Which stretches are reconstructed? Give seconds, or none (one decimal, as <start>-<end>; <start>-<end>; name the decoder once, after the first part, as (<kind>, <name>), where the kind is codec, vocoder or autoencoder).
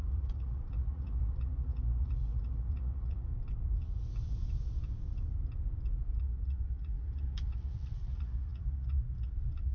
0.0-3.3 (vocoder, Vocos); 6.2-9.7